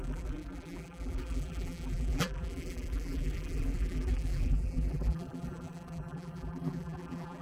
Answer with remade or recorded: remade